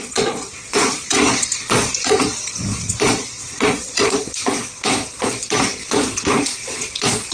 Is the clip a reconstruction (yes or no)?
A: yes